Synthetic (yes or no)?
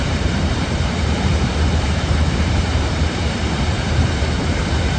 yes